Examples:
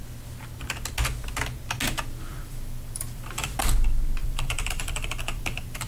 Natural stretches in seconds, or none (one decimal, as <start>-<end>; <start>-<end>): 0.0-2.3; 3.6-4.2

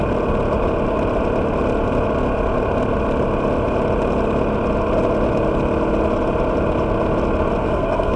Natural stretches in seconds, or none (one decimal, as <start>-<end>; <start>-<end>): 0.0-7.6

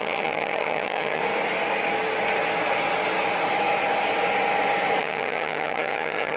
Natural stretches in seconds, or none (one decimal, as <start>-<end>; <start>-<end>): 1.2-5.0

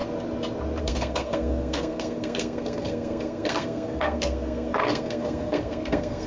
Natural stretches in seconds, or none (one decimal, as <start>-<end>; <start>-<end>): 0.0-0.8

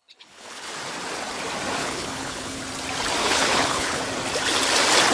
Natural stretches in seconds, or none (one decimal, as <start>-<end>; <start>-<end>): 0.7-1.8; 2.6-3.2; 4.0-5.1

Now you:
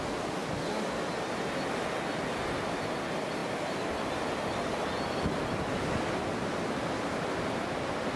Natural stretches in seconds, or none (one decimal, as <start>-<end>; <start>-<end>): 0.0-8.2

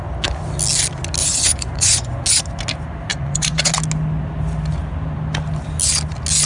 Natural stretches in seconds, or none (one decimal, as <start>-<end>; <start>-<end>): 0.0-1.2; 2.1-3.1; 3.7-6.5

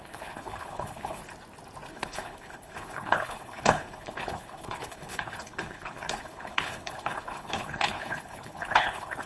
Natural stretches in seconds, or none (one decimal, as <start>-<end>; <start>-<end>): 1.2-1.9